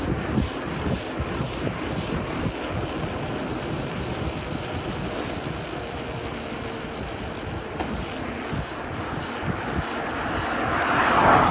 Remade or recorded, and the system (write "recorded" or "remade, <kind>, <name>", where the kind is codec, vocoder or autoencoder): recorded